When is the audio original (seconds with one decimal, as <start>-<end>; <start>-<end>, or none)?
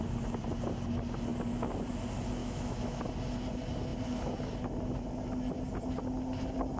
0.0-2.4; 3.0-6.8